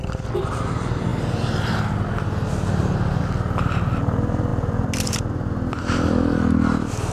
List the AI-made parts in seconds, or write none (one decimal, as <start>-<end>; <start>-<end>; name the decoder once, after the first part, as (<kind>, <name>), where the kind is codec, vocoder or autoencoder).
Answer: none